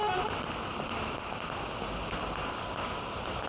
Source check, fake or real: real